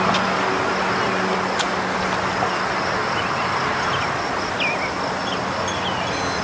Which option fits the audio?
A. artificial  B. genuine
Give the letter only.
B